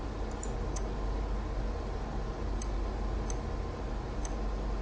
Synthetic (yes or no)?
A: no